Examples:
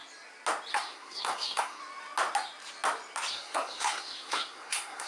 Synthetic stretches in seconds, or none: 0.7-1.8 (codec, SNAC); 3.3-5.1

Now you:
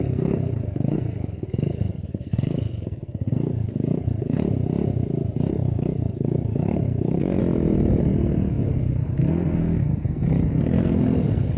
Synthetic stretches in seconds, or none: 0.0-4.4 (codec, SNAC); 5.5-7.4; 8.0-11.6